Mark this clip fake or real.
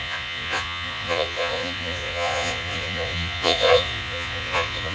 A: fake